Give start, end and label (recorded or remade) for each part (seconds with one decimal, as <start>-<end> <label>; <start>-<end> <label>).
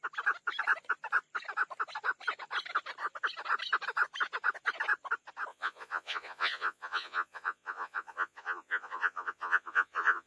0.0-5.5 recorded; 5.5-10.3 remade